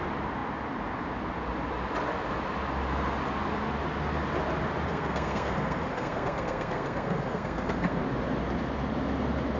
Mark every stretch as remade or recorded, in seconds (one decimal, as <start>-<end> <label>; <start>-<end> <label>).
0.0-4.9 recorded; 4.9-8.0 remade; 8.0-9.6 recorded

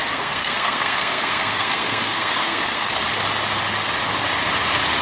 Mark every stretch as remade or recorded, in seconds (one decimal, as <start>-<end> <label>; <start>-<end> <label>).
0.0-3.0 remade; 3.0-5.0 recorded

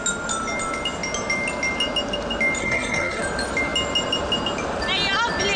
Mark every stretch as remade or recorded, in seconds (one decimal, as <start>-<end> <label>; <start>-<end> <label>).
0.0-2.6 recorded; 2.6-3.2 remade; 3.2-5.6 recorded

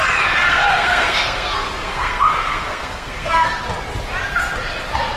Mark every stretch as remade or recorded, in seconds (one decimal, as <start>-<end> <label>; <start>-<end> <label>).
0.0-0.4 recorded; 0.4-3.5 remade; 3.5-5.2 recorded

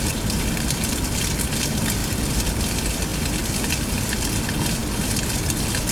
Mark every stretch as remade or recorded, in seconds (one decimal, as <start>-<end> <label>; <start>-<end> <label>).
0.0-5.9 recorded

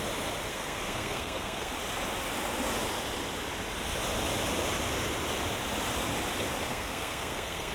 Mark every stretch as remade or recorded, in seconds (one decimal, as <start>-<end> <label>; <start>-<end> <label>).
0.0-0.5 recorded; 0.5-1.7 remade; 1.7-6.7 recorded; 6.7-7.7 remade

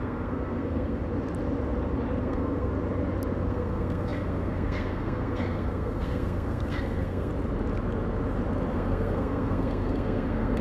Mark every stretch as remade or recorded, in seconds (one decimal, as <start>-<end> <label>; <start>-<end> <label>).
0.0-1.0 remade; 1.0-2.2 recorded; 2.2-2.7 remade; 2.7-3.5 recorded; 3.5-7.3 remade; 7.3-8.7 recorded; 8.7-10.6 remade

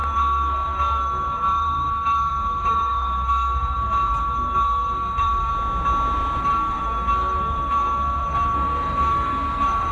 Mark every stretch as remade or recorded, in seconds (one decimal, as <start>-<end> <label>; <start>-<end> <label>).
0.0-5.5 remade; 5.5-6.4 recorded; 6.4-9.9 remade